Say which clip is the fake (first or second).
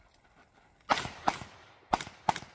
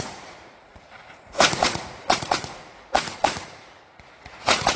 second